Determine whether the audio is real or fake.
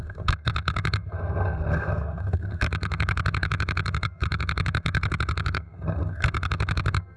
fake